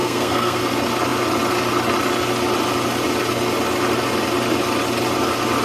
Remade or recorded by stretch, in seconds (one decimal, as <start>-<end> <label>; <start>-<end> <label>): 0.0-0.6 remade; 0.6-5.6 recorded